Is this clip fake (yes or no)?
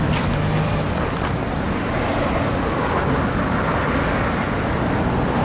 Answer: no